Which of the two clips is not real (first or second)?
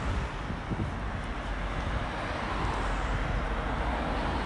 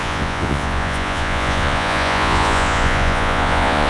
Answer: second